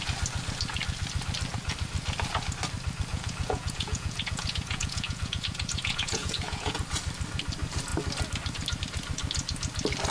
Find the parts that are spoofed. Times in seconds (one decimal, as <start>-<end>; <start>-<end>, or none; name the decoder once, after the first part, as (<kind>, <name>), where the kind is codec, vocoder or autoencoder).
3.1-6.8 (vocoder, Vocos)